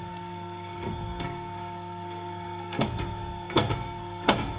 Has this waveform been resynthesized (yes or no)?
yes